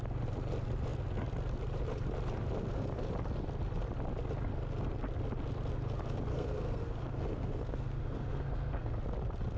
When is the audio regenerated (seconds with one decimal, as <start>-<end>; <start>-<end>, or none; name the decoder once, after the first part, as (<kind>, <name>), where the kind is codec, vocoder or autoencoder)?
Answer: 6.3-9.0 (codec, SNAC)